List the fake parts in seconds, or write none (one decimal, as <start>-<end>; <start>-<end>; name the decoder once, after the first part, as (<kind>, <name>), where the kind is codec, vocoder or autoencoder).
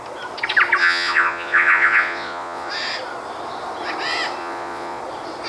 0.8-2.7 (vocoder, Vocos); 4.4-5.0